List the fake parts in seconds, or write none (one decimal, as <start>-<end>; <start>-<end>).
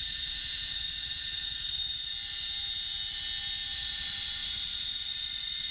0.0-2.1; 3.7-5.7